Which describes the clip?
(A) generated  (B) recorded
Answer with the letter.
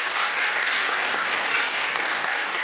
A